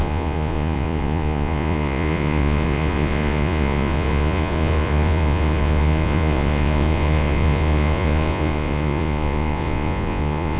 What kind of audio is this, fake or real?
fake